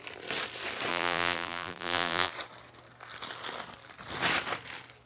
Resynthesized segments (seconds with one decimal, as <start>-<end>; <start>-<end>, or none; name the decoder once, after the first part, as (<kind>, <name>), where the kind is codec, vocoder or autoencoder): 0.9-2.3 (vocoder, BigVGAN v2)